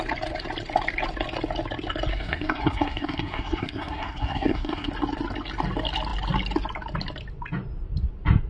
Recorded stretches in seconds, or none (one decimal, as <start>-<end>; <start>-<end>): 0.0-2.1; 4.9-8.5